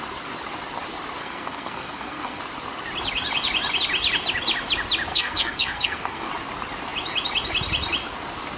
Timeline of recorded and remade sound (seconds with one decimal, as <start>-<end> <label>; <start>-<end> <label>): 0.0-1.2 recorded; 1.2-2.4 remade; 2.4-5.1 recorded; 5.1-6.3 remade; 6.3-8.6 recorded